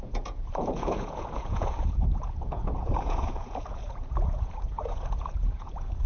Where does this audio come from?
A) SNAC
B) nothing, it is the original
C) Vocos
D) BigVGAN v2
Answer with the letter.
C